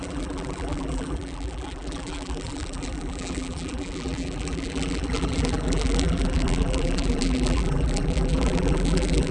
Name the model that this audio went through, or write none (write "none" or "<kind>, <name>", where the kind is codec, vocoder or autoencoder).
vocoder, BigVGAN v2